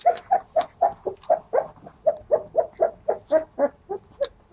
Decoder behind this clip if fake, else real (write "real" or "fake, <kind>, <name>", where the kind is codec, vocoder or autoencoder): real